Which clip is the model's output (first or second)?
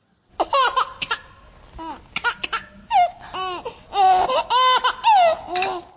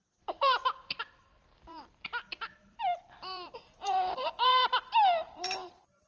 second